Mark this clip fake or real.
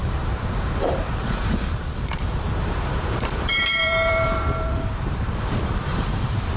fake